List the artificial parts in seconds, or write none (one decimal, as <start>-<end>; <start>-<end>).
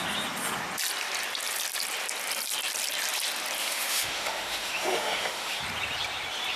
3.6-5.6